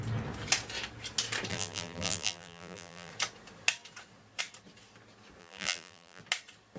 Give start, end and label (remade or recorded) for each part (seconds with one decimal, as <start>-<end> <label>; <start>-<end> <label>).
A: 0.0-1.5 recorded; 1.5-3.1 remade; 3.1-5.4 recorded; 5.4-6.2 remade; 6.2-6.8 recorded